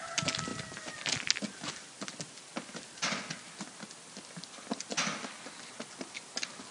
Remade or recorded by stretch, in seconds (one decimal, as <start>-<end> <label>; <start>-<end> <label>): 0.0-6.7 recorded